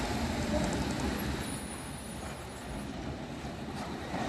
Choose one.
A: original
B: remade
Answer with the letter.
A